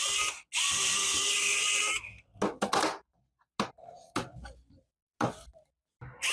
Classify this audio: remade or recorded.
recorded